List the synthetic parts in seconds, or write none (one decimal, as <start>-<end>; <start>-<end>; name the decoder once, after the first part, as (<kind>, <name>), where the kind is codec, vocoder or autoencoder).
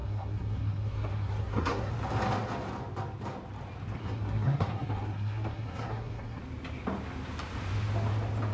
0.0-1.9 (codec, SNAC); 4.0-6.4